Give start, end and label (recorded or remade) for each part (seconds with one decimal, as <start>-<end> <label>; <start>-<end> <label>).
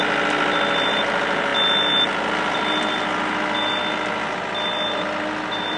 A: 0.0-5.8 recorded